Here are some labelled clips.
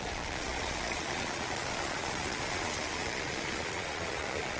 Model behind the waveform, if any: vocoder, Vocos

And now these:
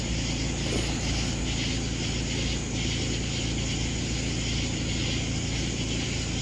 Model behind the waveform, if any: none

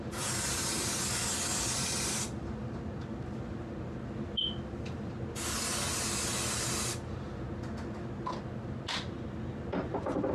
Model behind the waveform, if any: none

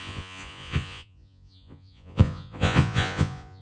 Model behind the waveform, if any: vocoder, Vocos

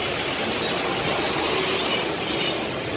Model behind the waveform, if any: none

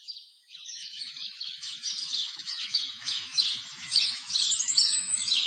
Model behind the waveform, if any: autoencoder, DAC-VAE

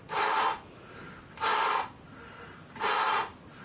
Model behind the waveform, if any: none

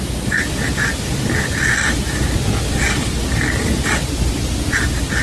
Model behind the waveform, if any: none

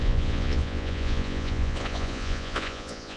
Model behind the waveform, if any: vocoder, Vocos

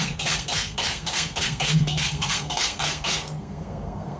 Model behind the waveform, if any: codec, SNAC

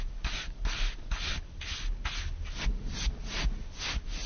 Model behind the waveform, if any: none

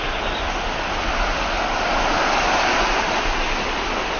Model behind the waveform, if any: none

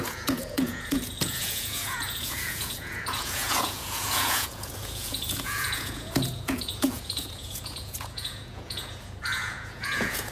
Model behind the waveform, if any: vocoder, Vocos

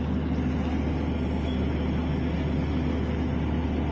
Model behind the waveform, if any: none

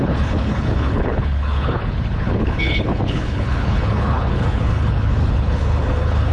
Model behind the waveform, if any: codec, HILCodec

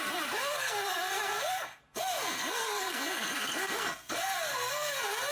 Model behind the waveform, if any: codec, SNAC